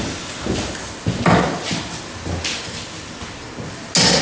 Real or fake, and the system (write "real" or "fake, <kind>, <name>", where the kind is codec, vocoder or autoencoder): real